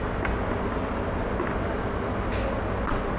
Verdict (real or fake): real